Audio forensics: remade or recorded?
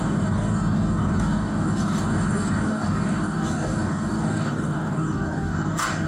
remade